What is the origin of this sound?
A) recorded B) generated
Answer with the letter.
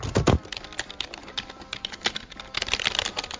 A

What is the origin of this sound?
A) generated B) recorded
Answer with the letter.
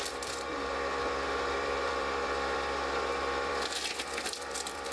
A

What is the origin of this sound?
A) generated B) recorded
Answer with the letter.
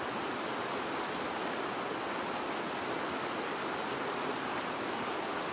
B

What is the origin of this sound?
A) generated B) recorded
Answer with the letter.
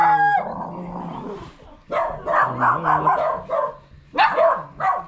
B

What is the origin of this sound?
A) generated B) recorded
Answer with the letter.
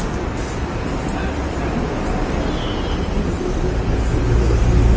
B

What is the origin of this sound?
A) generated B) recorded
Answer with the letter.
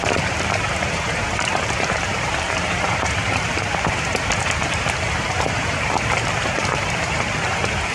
A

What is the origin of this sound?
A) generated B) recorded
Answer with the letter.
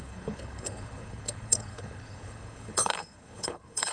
A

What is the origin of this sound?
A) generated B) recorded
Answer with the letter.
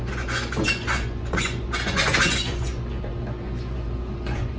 A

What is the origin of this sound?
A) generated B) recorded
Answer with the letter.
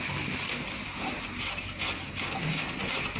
B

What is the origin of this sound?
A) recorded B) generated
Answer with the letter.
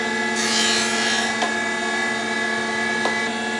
A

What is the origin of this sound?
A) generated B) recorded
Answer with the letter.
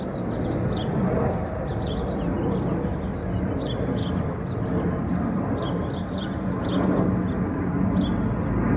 B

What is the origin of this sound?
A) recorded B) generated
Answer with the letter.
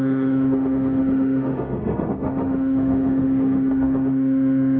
B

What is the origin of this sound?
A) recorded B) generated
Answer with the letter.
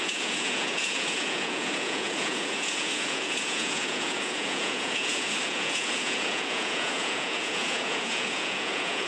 B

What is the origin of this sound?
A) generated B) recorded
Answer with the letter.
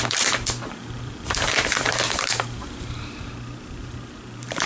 A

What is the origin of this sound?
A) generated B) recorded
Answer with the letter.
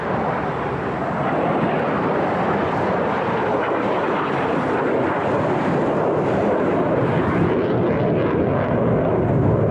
B